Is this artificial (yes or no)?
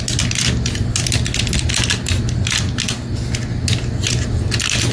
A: no